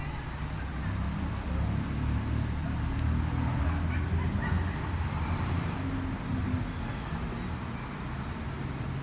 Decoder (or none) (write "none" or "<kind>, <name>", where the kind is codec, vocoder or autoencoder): none